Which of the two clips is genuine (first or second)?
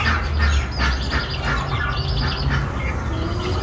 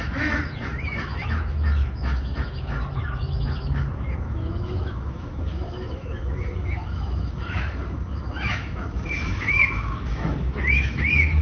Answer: first